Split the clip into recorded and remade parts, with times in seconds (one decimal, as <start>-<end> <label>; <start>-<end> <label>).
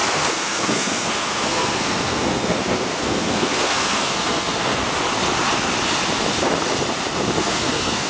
0.0-4.8 remade; 4.8-7.4 recorded; 7.4-8.1 remade